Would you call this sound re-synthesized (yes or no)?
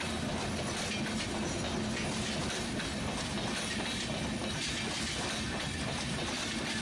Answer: no